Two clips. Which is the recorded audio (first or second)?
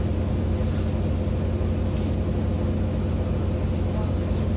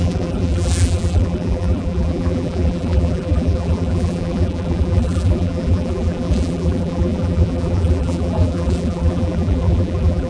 first